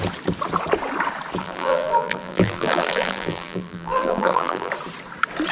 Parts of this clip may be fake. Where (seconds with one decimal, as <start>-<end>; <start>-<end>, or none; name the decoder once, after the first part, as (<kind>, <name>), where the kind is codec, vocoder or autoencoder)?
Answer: 1.4-4.7 (vocoder, BigVGAN v2)